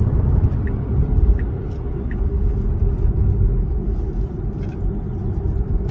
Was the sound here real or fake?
real